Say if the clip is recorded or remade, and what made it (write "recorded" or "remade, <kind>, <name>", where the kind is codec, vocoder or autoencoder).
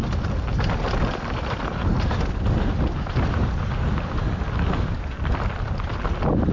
recorded